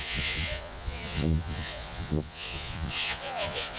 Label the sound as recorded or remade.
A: remade